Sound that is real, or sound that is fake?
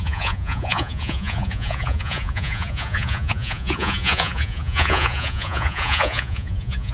fake